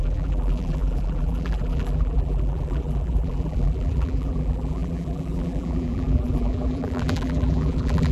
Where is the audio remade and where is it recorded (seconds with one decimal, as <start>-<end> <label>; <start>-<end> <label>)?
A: 0.0-8.1 remade